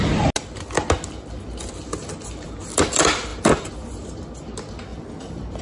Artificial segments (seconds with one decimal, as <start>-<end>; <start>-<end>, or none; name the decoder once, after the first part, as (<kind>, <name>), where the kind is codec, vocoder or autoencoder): 4.9-5.6 (vocoder, BigVGAN v2)